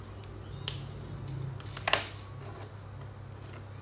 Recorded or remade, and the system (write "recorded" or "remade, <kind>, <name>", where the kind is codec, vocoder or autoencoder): recorded